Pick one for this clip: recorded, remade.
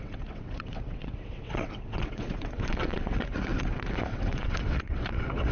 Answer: remade